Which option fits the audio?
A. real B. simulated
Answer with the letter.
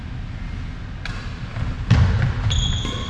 A